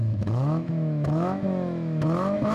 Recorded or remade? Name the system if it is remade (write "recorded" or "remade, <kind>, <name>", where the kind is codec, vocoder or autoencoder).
remade, autoencoder, DAC-VAE